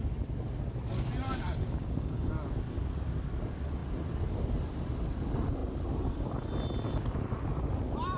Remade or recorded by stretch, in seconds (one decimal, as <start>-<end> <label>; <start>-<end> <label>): 0.0-1.6 recorded; 1.6-2.3 remade; 2.3-8.2 recorded